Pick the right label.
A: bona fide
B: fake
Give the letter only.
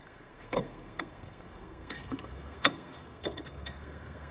B